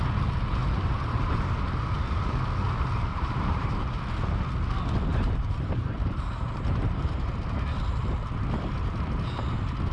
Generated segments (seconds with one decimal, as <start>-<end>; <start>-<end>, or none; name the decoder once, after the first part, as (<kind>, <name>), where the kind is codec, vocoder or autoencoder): 0.6-1.5 (vocoder, BigVGAN v2); 3.1-4.0; 5.1-7.2